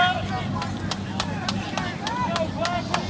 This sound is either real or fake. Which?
real